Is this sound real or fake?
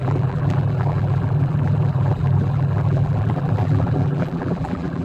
fake